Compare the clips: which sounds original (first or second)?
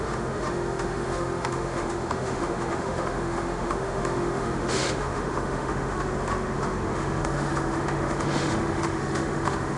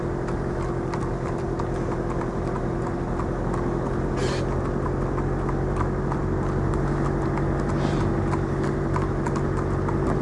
second